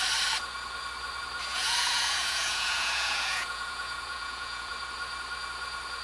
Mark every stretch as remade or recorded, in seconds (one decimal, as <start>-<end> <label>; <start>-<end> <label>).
0.0-1.5 recorded; 1.5-4.7 remade; 4.7-6.0 recorded